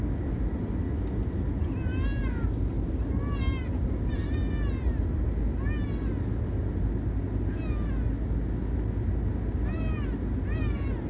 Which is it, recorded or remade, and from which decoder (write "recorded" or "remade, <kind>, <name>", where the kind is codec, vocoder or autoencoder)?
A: recorded